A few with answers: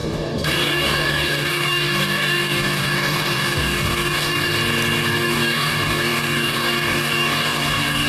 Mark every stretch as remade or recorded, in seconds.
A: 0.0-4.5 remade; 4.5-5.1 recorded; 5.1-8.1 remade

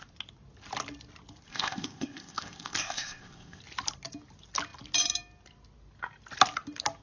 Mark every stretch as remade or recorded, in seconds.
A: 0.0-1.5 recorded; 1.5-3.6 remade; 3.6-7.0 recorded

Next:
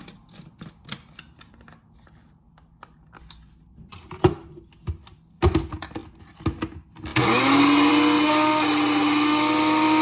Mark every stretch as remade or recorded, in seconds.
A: 0.0-4.0 recorded; 4.0-4.6 remade; 4.6-10.0 recorded